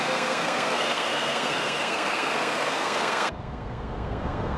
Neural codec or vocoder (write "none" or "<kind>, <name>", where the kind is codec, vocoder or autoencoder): codec, SNAC